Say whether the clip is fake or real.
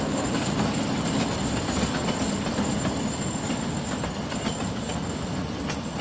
real